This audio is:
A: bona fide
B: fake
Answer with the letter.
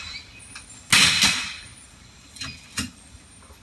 A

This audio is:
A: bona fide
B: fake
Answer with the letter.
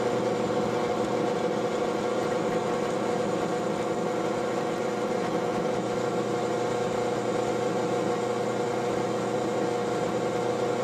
A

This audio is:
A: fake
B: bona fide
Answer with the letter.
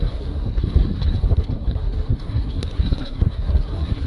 A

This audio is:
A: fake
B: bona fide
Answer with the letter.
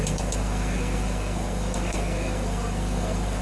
A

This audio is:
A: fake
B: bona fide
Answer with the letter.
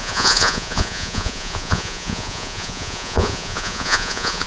A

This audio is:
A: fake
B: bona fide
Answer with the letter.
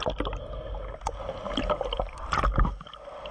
B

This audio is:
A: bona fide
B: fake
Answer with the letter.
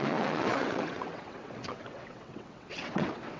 B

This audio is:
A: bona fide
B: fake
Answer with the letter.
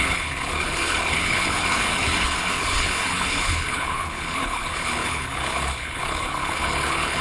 B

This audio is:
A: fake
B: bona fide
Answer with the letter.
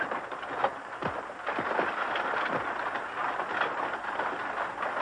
B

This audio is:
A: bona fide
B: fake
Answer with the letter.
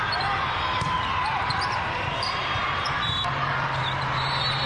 B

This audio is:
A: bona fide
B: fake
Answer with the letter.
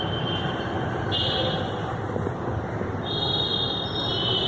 A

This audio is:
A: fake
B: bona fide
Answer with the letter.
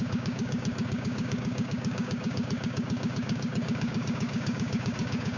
A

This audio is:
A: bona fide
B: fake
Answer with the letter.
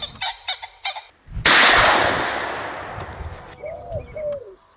A